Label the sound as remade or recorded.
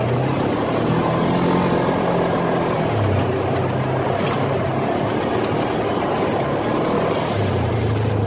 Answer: recorded